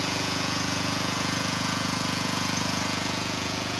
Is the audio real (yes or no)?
no